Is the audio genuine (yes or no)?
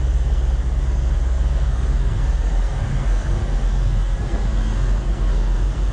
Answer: no